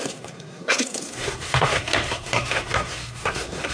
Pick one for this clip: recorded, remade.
remade